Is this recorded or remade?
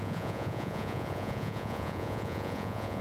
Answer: remade